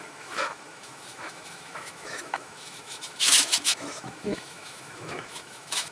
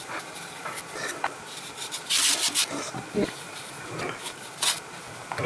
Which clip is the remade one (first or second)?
first